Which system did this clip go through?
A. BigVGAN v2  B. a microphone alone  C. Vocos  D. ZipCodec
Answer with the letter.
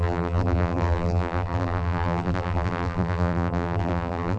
A